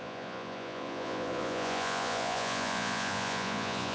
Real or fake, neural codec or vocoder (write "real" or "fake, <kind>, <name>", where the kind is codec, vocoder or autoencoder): fake, vocoder, Vocos